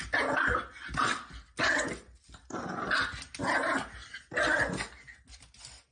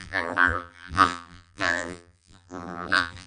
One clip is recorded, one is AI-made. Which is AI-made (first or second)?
second